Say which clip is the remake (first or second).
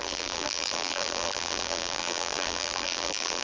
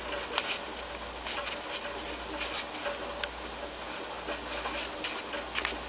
first